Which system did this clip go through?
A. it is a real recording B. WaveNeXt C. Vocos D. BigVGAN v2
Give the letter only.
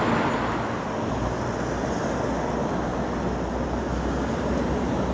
A